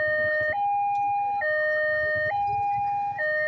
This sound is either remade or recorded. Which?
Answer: recorded